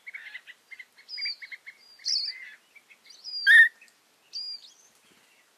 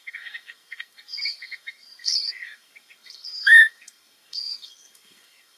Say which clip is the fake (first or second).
second